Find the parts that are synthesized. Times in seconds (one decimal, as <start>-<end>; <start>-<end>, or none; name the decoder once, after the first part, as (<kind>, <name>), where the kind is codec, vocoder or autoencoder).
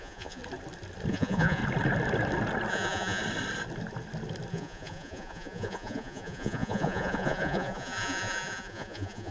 0.0-0.4 (vocoder, Vocos); 1.1-1.6; 2.7-3.2; 4.5-9.3